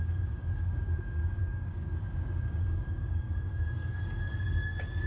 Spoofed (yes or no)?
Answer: yes